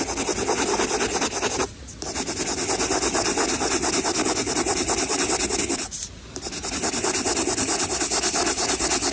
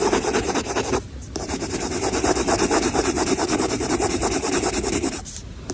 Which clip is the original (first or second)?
first